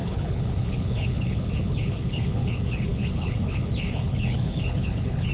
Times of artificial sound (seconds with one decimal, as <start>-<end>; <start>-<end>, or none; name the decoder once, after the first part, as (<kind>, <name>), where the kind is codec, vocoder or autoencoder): 0.0-5.3 (codec, HILCodec)